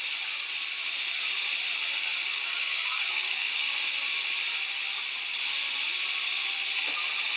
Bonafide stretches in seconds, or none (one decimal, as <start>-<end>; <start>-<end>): 0.0-2.3; 3.8-7.4